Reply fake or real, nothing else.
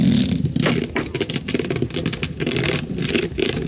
real